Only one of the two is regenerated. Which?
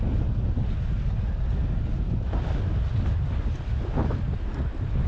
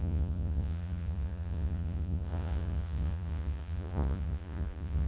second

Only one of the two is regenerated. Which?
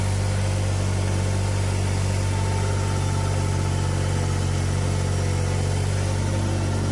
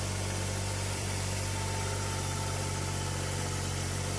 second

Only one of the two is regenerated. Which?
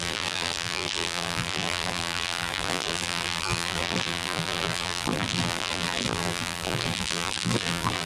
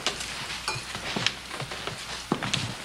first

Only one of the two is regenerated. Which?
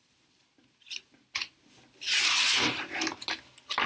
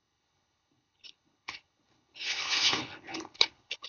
second